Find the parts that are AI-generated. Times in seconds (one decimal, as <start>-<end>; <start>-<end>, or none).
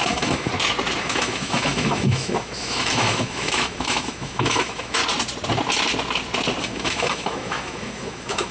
0.0-0.5; 1.0-5.0; 6.6-8.5